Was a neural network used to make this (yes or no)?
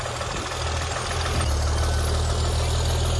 no